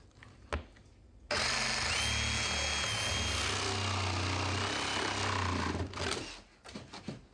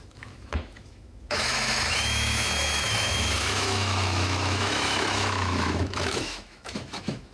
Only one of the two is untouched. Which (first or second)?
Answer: first